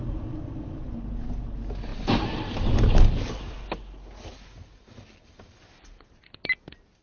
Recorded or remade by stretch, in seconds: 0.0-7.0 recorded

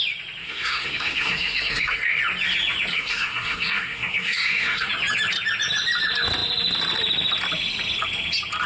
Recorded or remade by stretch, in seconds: 0.0-0.4 recorded; 0.4-2.2 remade; 2.2-2.9 recorded; 2.9-4.9 remade; 4.9-8.7 recorded

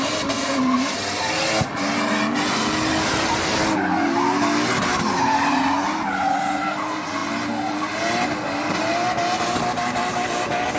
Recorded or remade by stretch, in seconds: 0.0-10.8 recorded

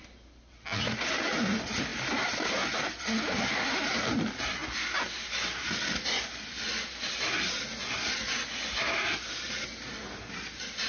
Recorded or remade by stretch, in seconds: 0.0-1.9 recorded; 1.9-3.0 remade; 3.0-10.9 recorded

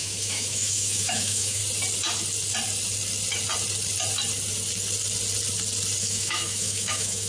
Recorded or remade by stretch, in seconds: 0.0-1.6 remade; 1.6-6.0 recorded; 6.0-7.3 remade

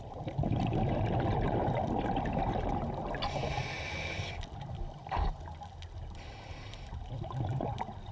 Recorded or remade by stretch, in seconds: 0.0-1.9 remade; 1.9-8.1 recorded